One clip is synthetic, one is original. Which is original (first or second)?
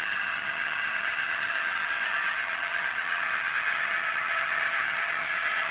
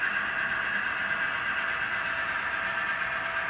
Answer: second